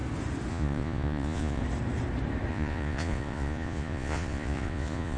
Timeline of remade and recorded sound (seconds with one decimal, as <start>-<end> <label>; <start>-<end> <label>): 0.0-0.5 recorded; 0.5-1.6 remade; 1.6-2.5 recorded; 2.5-5.2 remade